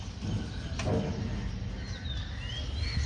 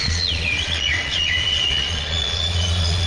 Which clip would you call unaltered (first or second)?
first